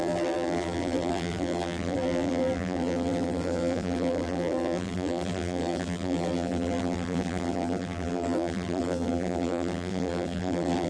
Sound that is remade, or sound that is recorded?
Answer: remade